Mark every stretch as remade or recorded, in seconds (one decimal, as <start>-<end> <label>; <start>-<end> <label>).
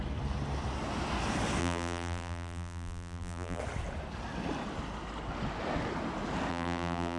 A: 0.0-1.6 recorded; 1.6-3.6 remade; 3.6-6.5 recorded; 6.5-7.2 remade